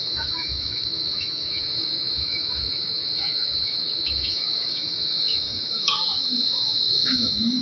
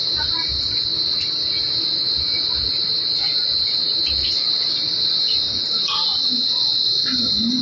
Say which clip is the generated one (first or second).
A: first